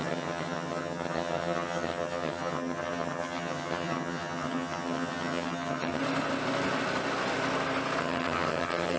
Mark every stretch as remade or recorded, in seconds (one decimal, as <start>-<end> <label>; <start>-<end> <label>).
0.0-6.0 remade; 6.0-8.0 recorded; 8.0-9.0 remade